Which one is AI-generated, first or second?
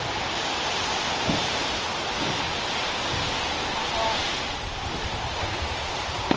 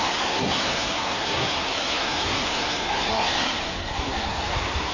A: second